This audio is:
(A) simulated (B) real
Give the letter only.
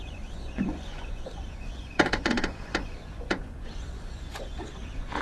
A